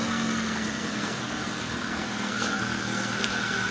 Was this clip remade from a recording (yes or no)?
yes